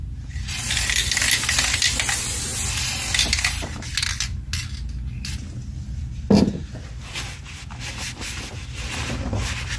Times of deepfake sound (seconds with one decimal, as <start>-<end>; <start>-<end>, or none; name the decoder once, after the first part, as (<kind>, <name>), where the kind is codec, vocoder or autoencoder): none